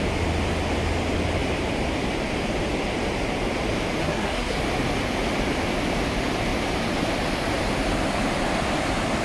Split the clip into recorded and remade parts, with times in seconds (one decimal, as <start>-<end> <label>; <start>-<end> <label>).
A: 0.0-4.0 recorded; 4.0-4.6 remade; 4.6-9.2 recorded

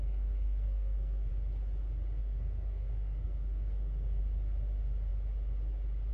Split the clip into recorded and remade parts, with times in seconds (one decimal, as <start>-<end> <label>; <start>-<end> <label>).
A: 0.0-1.3 remade; 1.3-2.2 recorded; 2.2-4.2 remade; 4.2-6.1 recorded

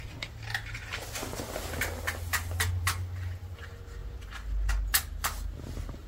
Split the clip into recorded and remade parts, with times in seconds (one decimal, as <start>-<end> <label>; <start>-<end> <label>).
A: 0.0-6.1 recorded